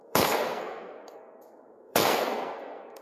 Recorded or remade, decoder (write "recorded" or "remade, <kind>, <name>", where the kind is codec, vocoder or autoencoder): remade, codec, SNAC